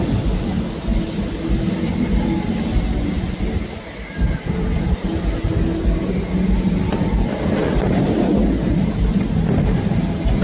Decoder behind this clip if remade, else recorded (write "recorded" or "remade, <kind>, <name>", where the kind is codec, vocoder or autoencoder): recorded